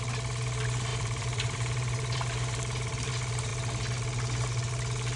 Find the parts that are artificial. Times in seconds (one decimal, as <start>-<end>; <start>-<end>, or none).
0.9-3.1